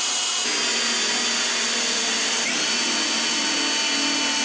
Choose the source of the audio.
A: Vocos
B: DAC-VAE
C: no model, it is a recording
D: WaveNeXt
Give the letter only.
C